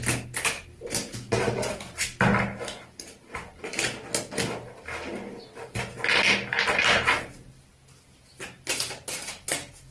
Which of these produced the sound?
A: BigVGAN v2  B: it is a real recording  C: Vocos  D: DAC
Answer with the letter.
B